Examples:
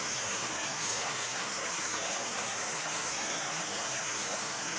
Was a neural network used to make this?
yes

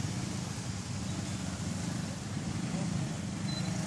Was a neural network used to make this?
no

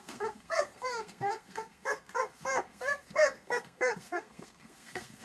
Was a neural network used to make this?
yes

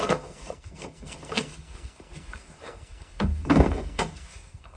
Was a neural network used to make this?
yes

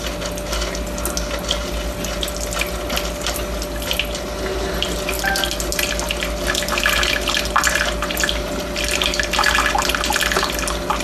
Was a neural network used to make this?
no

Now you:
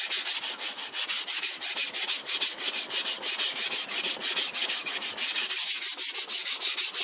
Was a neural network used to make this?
no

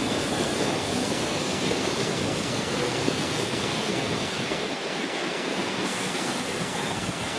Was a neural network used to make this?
yes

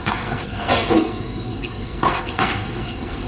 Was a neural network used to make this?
yes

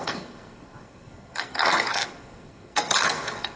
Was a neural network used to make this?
yes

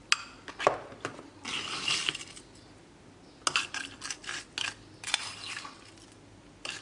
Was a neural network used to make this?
no